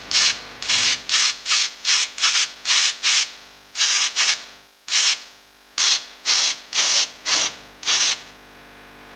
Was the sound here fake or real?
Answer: real